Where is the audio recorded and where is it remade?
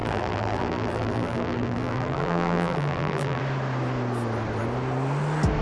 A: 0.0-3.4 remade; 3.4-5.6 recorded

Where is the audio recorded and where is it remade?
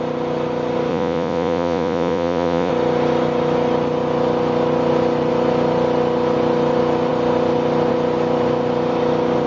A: 0.0-0.9 recorded; 0.9-2.7 remade; 2.7-9.5 recorded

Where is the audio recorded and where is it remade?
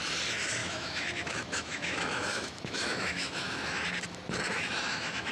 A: 0.0-0.6 recorded; 0.6-3.8 remade; 3.8-4.5 recorded; 4.5-5.3 remade